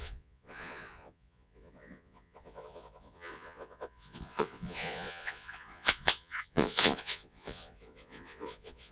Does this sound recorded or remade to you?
remade